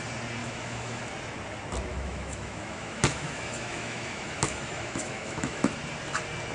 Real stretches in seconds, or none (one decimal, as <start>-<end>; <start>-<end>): 0.0-0.4; 1.0-1.9; 5.7-6.5